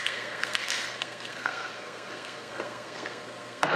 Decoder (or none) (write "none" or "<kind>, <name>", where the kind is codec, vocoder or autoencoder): codec, SNAC